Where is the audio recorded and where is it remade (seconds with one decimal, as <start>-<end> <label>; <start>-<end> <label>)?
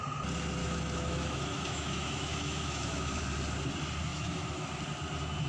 0.0-0.6 recorded; 0.6-3.2 remade; 3.2-4.1 recorded; 4.1-4.8 remade; 4.8-5.5 recorded